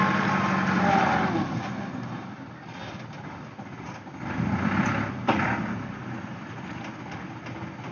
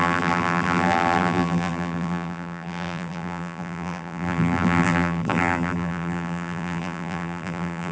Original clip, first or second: first